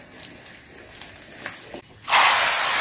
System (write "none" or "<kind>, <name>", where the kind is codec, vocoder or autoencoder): none